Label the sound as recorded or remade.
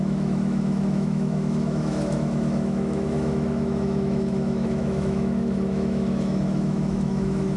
remade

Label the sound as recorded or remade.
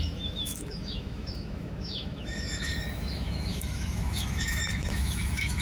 remade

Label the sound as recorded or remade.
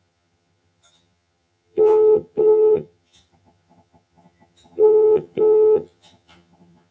remade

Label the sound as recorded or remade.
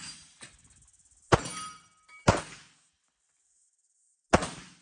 recorded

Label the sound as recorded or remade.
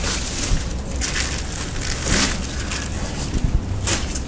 recorded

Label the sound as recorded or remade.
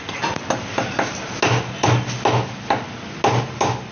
recorded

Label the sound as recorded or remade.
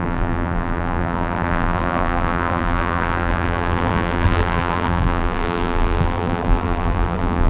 remade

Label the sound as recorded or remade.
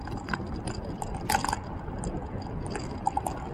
recorded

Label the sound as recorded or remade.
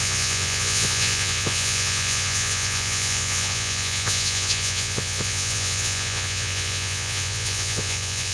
remade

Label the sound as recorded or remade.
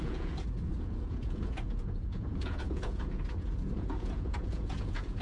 remade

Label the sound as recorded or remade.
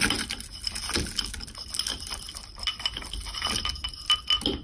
recorded